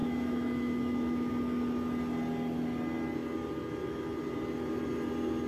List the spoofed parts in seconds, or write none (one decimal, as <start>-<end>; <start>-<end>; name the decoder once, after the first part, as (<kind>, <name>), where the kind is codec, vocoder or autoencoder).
0.0-1.3 (autoencoder, DAC-VAE)